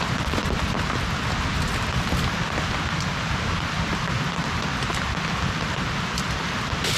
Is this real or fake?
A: real